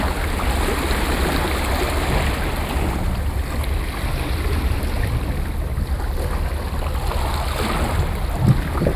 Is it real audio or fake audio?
real